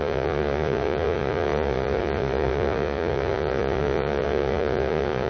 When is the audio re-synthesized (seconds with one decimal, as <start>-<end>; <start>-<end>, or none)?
0.0-5.3